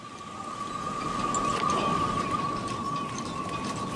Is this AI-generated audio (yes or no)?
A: no